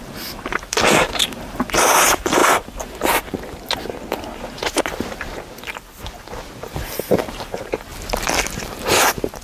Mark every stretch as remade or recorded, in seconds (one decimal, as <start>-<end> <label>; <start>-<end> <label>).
0.0-2.4 remade; 2.4-7.2 recorded; 7.2-7.9 remade; 7.9-9.0 recorded; 9.0-9.4 remade